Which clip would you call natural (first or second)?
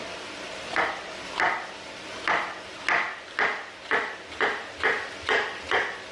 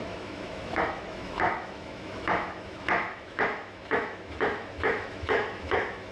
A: first